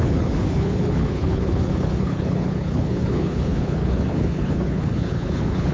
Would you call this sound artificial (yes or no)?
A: yes